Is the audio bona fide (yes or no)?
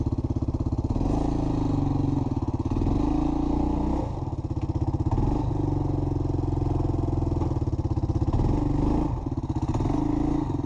yes